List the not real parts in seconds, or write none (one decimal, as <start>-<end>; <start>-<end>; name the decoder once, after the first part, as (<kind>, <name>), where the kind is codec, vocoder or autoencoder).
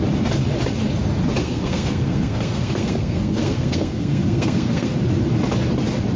1.4-4.9 (codec, SNAC)